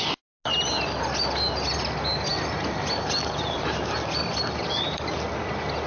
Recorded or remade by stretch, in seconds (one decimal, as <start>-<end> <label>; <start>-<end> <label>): 0.0-5.9 recorded